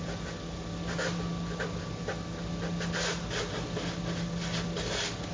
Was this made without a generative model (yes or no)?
yes